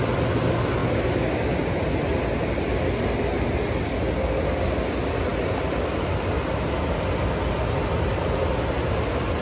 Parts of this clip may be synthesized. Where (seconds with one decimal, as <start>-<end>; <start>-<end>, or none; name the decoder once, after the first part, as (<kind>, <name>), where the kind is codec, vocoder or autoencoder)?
5.3-9.0 (vocoder, BigVGAN v2)